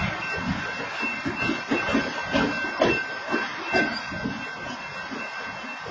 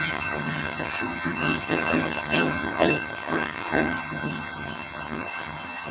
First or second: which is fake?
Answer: second